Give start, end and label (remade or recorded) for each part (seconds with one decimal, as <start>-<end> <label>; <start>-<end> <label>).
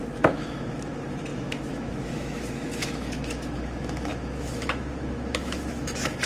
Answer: 0.0-6.3 remade